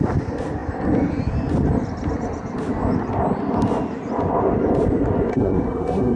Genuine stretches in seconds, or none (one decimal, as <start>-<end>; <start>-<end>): 0.0-5.3